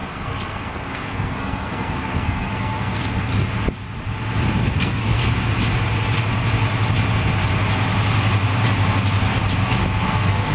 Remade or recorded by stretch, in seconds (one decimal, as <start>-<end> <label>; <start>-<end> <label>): 0.0-3.3 remade; 3.3-4.6 recorded; 4.6-5.2 remade; 5.2-10.0 recorded; 10.0-10.5 remade